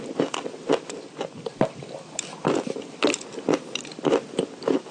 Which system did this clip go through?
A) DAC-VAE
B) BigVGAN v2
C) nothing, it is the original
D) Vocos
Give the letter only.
C